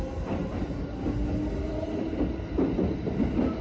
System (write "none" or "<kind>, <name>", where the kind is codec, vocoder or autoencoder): none